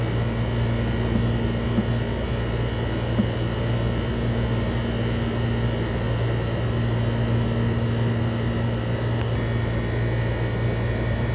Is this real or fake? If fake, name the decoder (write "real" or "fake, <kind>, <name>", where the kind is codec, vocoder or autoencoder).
real